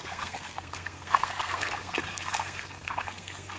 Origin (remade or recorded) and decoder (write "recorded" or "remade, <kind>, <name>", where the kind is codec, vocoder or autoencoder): remade, codec, SNAC